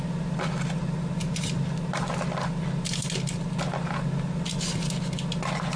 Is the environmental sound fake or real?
real